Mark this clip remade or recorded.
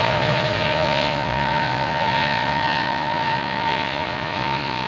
remade